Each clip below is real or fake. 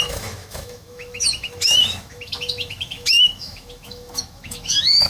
fake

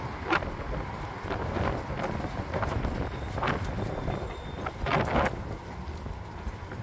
real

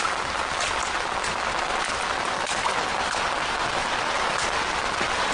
real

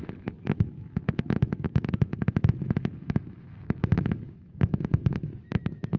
fake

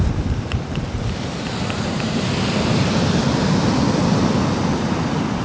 real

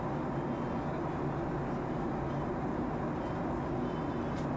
real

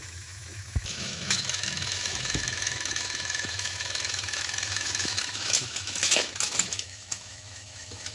fake